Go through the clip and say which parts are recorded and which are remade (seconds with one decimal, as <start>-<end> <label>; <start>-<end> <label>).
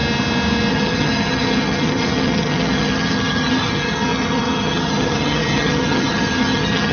0.0-0.7 recorded; 0.7-6.9 remade